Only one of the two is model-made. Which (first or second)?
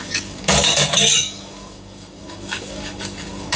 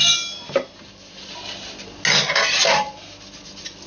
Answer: first